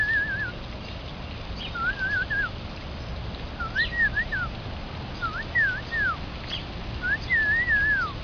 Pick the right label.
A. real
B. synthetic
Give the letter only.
A